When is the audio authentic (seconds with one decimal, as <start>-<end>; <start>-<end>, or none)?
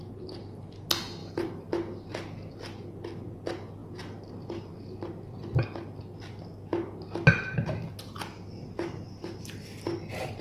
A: 0.0-1.2; 1.7-10.4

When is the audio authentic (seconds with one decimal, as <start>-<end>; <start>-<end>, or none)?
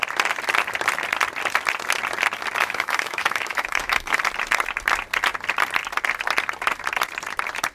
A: 0.0-2.6; 4.2-7.7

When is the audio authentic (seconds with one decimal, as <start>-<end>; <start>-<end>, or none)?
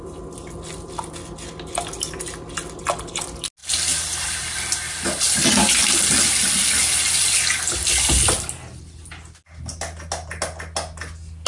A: 0.0-11.5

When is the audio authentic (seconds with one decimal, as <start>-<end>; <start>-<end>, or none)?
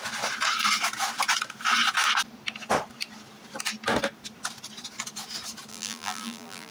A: 0.0-5.7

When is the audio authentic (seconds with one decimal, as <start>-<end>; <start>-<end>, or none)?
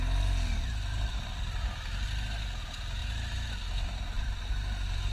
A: 0.0-3.0; 4.5-5.1